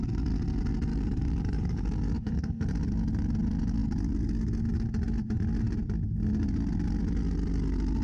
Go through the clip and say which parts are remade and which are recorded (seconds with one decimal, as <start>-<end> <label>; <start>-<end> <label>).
0.0-0.9 recorded; 0.9-2.7 remade; 2.7-8.0 recorded